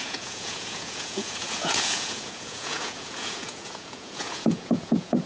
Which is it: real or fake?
fake